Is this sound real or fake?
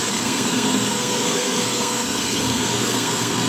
fake